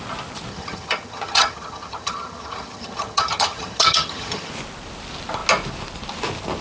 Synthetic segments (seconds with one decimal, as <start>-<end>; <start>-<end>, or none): 0.5-4.5